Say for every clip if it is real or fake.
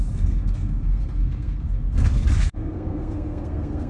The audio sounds fake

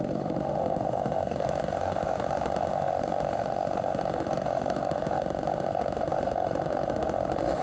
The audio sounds fake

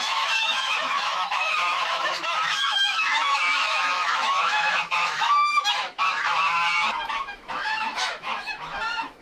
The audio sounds fake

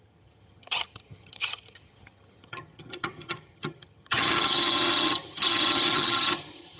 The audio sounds fake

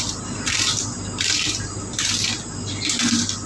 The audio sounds fake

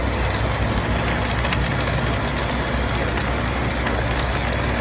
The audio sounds real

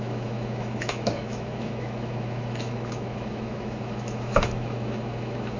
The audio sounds fake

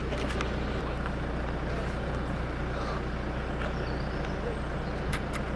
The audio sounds real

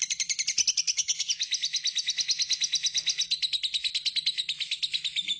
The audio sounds real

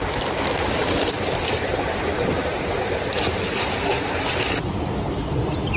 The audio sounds real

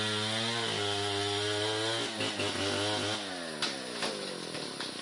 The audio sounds real